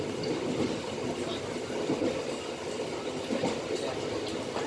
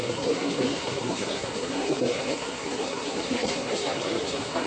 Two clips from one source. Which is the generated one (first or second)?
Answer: second